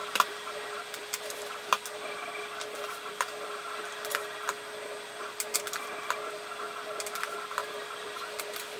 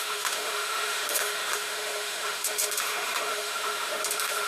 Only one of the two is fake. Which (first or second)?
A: second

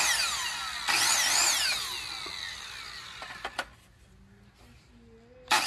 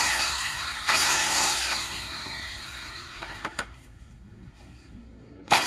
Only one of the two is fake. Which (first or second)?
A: second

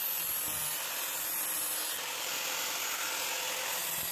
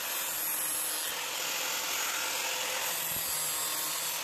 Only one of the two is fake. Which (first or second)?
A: first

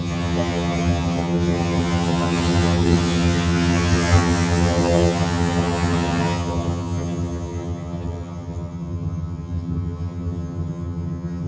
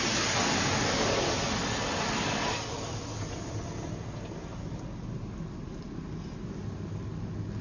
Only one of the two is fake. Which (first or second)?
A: first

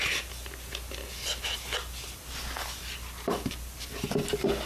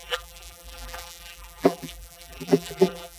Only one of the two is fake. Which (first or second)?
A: second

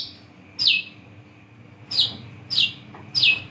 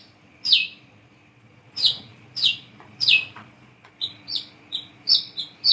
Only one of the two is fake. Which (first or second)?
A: second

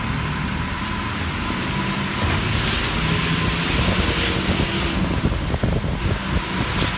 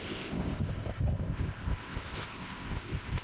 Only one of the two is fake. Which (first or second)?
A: second